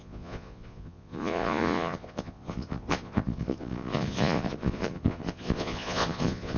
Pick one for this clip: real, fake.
fake